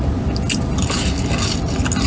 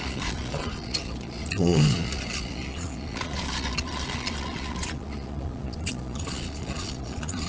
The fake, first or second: second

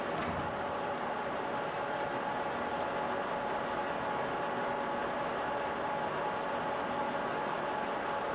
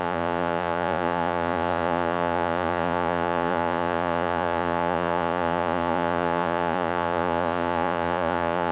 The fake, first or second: second